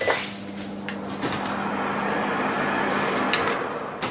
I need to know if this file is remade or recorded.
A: recorded